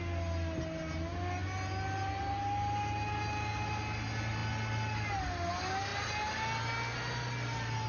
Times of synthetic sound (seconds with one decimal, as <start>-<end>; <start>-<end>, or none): none